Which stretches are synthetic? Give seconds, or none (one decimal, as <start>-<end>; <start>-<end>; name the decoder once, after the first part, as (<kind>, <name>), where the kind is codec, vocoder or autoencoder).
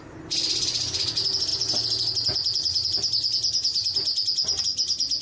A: none